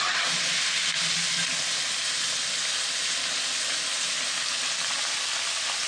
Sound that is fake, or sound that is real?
real